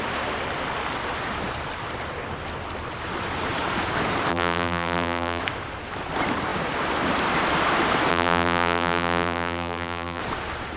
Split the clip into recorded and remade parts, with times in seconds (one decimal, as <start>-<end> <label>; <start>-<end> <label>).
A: 0.0-4.3 recorded; 4.3-5.4 remade; 5.4-8.1 recorded; 8.1-10.2 remade; 10.2-10.8 recorded